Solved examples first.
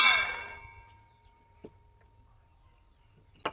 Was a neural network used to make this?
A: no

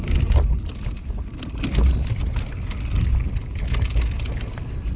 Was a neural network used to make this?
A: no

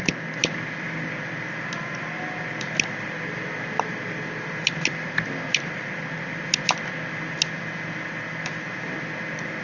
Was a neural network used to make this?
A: no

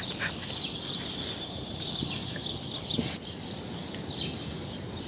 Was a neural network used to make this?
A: no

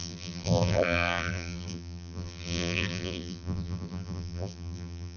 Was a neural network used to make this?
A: yes